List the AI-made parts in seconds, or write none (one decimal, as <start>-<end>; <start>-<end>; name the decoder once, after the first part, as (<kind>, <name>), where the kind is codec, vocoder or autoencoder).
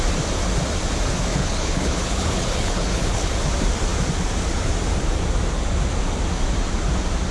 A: 1.3-3.3 (codec, HILCodec)